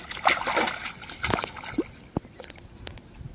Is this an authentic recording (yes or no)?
yes